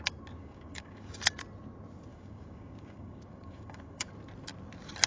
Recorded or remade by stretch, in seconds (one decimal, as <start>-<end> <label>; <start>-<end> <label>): 0.0-0.4 recorded; 0.4-1.1 remade; 1.1-2.1 recorded; 2.1-4.1 remade; 4.1-5.1 recorded